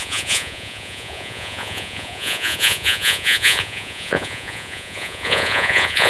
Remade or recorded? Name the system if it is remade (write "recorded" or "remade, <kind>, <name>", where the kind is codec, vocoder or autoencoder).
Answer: remade, vocoder, Vocos